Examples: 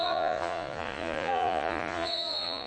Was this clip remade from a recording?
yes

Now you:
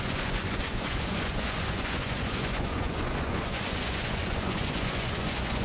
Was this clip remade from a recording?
yes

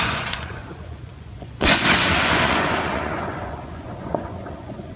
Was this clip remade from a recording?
yes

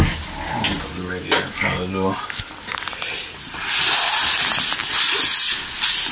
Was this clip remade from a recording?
no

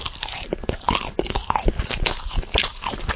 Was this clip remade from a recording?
no